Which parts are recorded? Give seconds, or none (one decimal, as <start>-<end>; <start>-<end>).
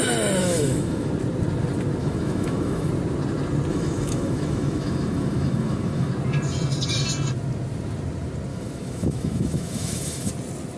0.0-0.4; 1.1-2.0; 2.9-3.7; 6.1-8.5; 10.3-10.8